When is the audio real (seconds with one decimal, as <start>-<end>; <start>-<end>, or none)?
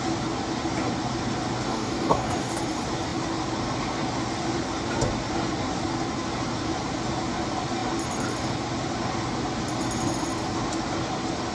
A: 0.0-1.7; 2.6-11.5